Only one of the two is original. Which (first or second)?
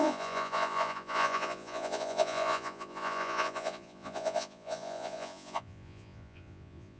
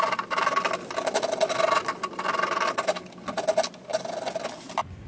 second